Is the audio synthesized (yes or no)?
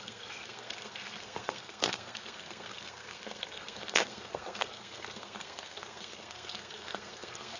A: yes